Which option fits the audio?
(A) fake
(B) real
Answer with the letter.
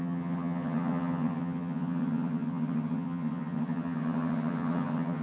A